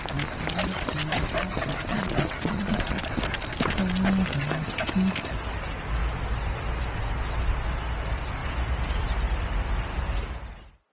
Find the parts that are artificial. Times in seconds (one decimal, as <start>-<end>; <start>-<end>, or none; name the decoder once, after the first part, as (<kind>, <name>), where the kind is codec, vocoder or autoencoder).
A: 1.9-3.0 (vocoder, Vocos)

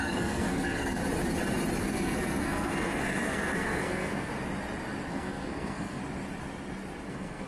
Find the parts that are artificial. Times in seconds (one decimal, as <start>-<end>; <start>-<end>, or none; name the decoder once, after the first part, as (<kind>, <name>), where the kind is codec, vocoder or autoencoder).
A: 0.0-1.0 (codec, SNAC); 1.8-4.3; 5.1-6.0; 7.1-7.5

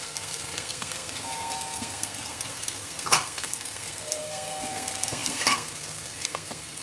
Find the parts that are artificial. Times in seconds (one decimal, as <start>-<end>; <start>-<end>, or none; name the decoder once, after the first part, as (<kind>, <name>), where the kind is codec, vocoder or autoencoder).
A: 0.0-6.8 (codec, SNAC)

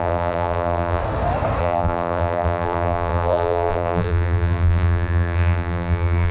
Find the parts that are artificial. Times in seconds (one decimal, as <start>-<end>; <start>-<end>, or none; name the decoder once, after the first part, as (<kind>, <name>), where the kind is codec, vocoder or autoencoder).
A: 0.0-1.0 (vocoder, BigVGAN v2); 1.6-6.3

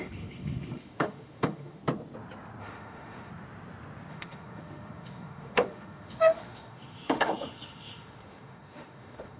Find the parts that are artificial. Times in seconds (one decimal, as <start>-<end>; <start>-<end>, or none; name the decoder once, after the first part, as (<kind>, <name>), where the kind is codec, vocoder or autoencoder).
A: 0.0-1.8 (autoencoder, DAC-VAE); 2.6-3.3; 4.1-9.4

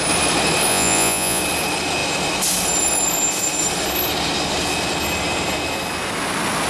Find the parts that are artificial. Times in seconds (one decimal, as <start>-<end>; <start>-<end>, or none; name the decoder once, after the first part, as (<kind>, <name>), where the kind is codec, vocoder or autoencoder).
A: 0.7-1.4 (vocoder, Vocos)

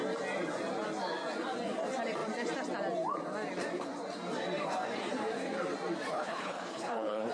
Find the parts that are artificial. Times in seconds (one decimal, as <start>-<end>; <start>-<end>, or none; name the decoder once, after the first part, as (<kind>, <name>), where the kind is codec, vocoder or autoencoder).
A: 6.1-7.3 (codec, HILCodec)

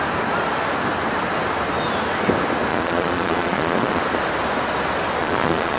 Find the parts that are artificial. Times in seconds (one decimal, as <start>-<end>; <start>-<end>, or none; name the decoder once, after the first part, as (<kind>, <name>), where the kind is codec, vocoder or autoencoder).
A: 2.7-4.0 (vocoder, Vocos); 5.2-5.8